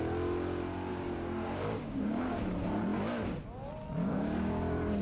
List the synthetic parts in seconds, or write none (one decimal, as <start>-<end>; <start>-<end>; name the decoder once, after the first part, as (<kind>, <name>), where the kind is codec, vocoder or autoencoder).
0.9-2.4 (codec, DAC); 4.0-5.0